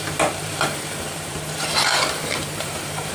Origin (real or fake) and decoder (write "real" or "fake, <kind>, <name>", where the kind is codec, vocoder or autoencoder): fake, vocoder, BigVGAN v2